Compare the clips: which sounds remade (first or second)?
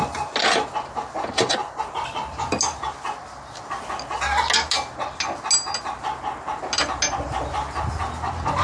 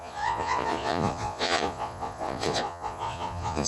second